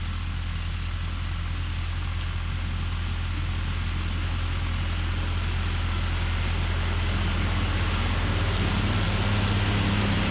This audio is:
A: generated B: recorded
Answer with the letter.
B